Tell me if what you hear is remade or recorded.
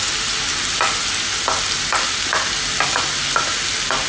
recorded